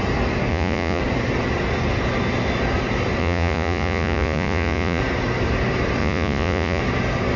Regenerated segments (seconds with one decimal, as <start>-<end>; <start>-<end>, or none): 0.5-1.0; 3.2-5.0; 6.0-6.8